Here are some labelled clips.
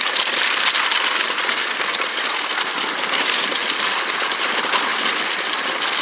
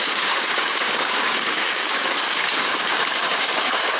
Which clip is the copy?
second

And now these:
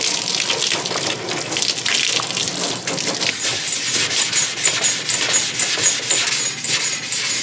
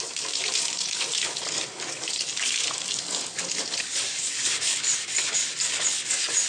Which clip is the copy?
second